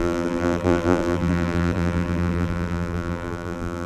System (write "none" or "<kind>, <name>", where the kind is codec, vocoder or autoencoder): vocoder, BigVGAN v2